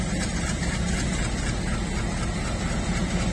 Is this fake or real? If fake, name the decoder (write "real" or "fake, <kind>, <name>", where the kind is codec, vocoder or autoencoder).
real